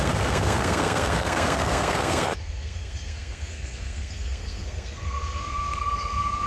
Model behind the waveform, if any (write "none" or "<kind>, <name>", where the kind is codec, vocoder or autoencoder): codec, SNAC